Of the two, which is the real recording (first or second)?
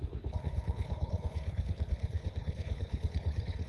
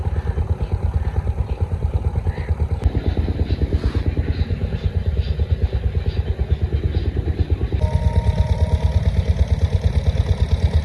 second